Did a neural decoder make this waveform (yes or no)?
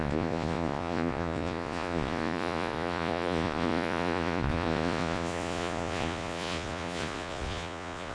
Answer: yes